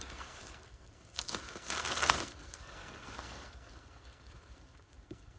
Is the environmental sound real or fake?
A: fake